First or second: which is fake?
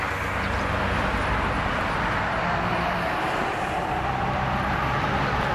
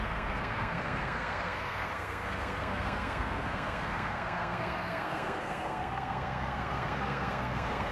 second